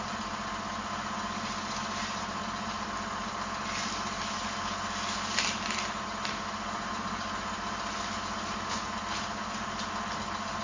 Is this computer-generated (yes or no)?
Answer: no